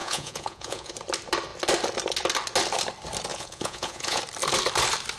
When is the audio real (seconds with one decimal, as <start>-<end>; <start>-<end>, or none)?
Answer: 0.9-3.3; 4.2-5.2